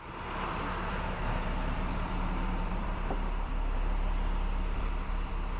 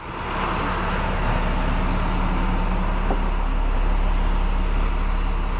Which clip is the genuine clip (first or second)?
second